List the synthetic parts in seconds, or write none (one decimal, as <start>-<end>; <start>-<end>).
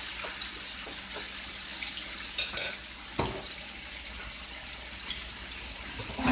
none